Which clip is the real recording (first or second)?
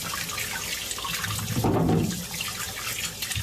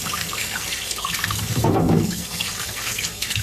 first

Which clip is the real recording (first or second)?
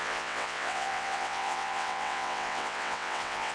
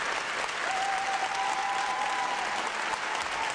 second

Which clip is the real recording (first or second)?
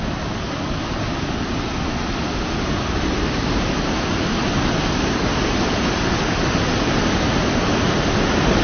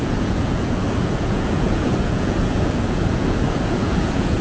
first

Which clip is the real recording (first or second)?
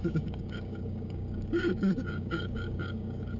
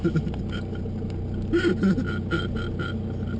second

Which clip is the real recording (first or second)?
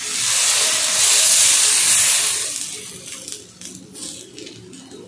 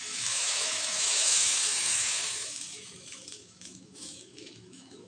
first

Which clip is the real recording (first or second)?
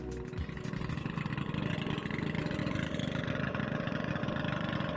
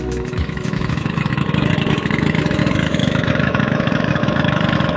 first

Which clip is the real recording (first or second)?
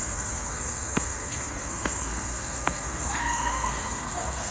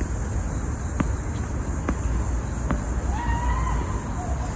second